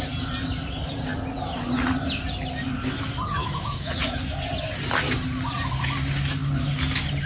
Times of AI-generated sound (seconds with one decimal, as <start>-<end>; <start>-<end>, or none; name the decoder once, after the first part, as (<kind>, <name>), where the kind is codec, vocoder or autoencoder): 3.4-3.9 (autoencoder, DAC-VAE)